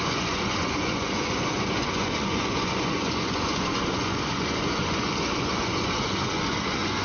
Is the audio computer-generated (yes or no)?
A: yes